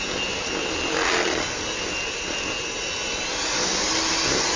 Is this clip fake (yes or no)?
no